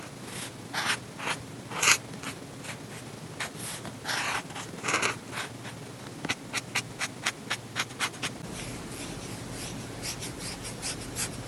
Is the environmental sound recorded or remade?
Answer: recorded